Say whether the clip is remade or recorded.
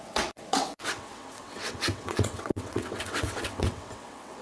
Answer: remade